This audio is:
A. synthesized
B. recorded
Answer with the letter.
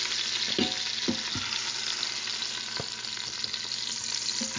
B